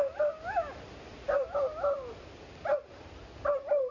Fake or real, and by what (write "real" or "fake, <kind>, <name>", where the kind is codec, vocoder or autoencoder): real